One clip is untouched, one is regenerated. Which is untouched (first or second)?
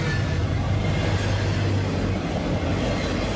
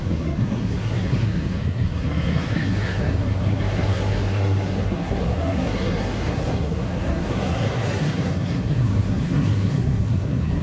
first